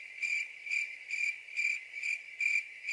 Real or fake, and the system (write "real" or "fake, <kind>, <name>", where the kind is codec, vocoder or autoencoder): real